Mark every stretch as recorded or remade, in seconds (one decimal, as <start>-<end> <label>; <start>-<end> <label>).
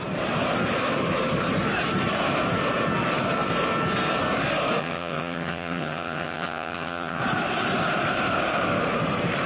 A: 0.0-4.8 recorded; 4.8-7.2 remade; 7.2-9.5 recorded